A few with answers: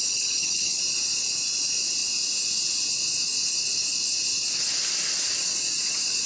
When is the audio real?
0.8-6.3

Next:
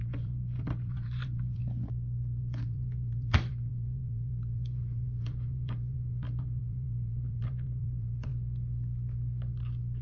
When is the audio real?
1.6-2.4; 8.3-10.0

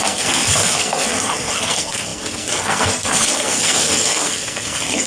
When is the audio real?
none

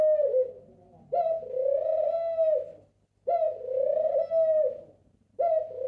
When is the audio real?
0.0-5.0

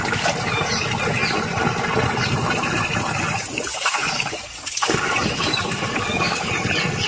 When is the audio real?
0.0-3.7; 6.5-7.1